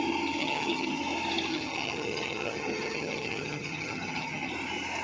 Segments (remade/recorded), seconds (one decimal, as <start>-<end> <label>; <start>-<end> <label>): 0.0-0.4 recorded; 0.4-1.0 remade; 1.0-1.5 recorded; 1.5-4.5 remade; 4.5-5.0 recorded